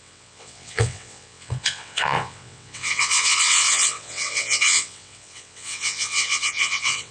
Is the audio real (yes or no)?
no